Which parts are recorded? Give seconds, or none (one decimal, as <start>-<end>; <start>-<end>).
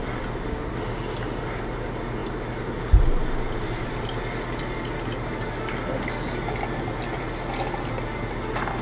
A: 0.0-2.2; 2.8-8.8